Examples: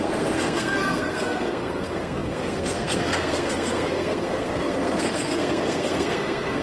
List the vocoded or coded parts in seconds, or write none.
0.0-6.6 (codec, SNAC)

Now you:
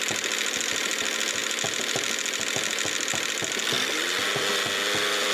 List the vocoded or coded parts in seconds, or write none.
none

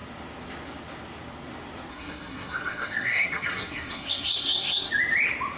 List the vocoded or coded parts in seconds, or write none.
1.9-4.9 (codec, SNAC)

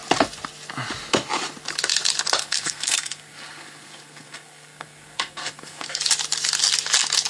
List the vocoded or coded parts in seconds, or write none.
2.4-6.0 (codec, SNAC)

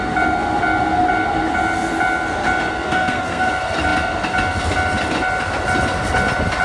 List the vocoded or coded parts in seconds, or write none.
2.7-3.5 (codec, SNAC)

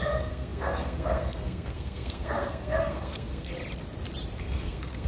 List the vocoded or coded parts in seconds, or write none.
0.0-3.5 (codec, SNAC); 4.4-5.1